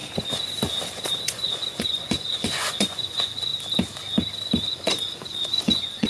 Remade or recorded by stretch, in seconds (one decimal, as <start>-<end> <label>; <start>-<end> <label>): 0.0-1.1 recorded; 1.1-3.5 remade; 3.5-4.7 recorded; 4.7-6.1 remade